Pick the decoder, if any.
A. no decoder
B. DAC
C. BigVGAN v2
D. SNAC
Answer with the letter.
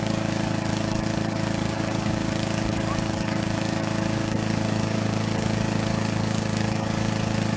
B